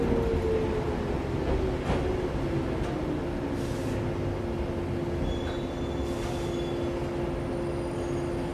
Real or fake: real